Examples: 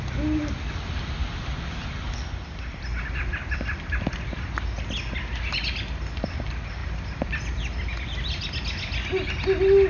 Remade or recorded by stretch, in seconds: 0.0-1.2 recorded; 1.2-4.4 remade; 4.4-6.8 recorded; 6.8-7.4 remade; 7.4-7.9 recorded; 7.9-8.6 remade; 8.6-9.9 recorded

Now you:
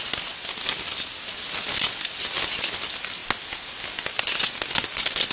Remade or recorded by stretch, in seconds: 0.0-5.3 recorded